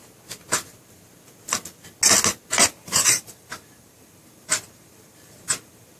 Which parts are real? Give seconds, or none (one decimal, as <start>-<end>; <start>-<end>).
0.0-2.6

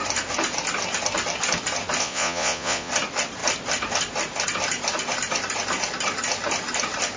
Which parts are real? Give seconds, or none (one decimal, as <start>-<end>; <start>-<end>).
0.0-2.0; 2.9-7.2

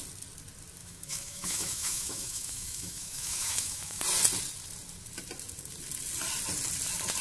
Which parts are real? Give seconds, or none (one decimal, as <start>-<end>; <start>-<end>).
0.0-0.8; 4.0-7.2

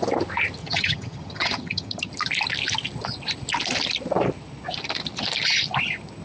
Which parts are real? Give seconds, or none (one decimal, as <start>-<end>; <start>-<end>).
0.0-0.6; 2.1-6.2

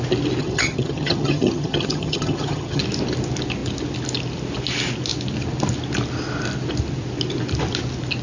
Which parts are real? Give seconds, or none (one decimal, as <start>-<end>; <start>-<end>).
0.0-0.4; 2.8-8.2

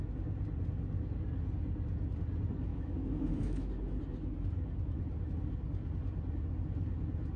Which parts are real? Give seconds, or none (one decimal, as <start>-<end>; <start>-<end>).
0.0-2.7; 3.7-7.4

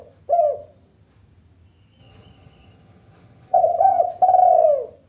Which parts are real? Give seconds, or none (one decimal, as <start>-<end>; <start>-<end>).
0.0-2.0; 4.0-5.1

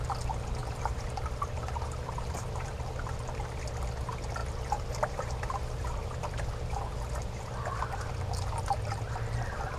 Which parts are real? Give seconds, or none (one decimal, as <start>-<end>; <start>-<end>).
0.0-0.6; 3.1-4.4; 8.1-9.8